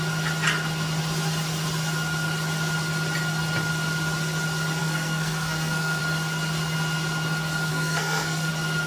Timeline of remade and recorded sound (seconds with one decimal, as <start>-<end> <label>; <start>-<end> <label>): 0.0-4.8 recorded; 4.8-6.0 remade; 6.0-7.7 recorded; 7.7-8.5 remade; 8.5-8.9 recorded